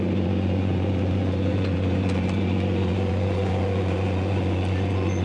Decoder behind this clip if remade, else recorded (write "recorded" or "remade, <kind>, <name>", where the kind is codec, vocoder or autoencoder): remade, vocoder, Vocos